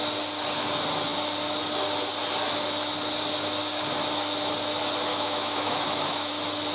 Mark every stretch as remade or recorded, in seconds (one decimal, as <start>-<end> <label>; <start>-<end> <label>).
0.0-5.1 recorded; 5.1-6.3 remade; 6.3-6.7 recorded